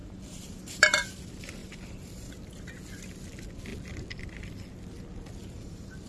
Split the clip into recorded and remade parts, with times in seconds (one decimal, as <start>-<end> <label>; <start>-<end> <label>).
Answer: 0.0-1.1 remade; 1.1-1.6 recorded; 1.6-2.3 remade; 2.3-5.4 recorded; 5.4-6.1 remade